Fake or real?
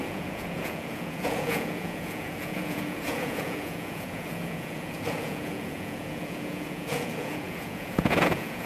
fake